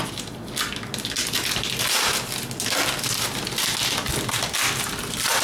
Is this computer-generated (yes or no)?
no